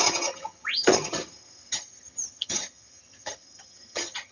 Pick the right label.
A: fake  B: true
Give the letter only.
A